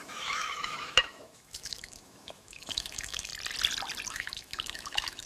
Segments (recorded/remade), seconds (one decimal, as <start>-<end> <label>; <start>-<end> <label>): 0.0-3.3 remade; 3.3-4.1 recorded; 4.1-5.3 remade